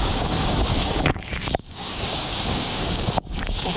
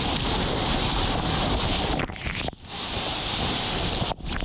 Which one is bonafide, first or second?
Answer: second